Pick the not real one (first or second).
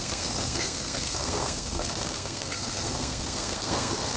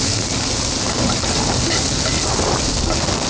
first